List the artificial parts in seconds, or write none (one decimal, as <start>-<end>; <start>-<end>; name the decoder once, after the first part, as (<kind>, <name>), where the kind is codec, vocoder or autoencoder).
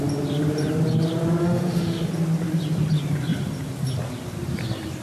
1.4-2.1 (autoencoder, DAC-VAE)